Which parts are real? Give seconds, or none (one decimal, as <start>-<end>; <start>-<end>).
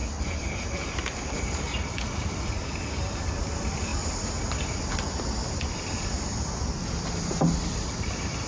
none